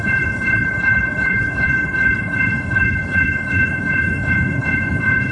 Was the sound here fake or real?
fake